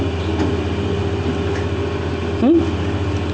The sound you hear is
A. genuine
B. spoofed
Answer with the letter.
A